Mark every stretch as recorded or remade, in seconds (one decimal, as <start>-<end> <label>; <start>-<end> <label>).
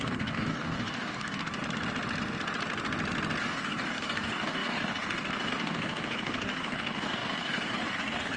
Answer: 0.0-1.6 remade; 1.6-3.4 recorded; 3.4-8.4 remade